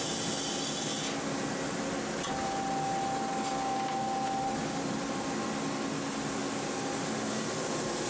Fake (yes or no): no